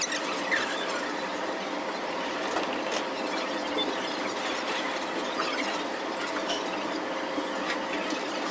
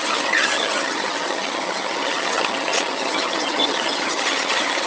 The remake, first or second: second